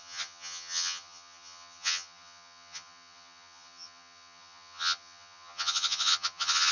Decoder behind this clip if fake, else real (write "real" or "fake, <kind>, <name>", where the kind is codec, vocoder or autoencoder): fake, vocoder, HiFi-GAN